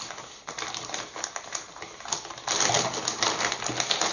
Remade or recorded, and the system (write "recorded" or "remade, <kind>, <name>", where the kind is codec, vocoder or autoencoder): recorded